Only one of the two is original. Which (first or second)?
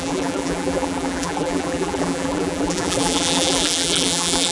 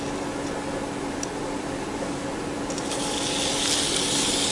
second